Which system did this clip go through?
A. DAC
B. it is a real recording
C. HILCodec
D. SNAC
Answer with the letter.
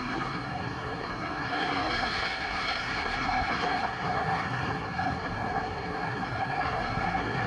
D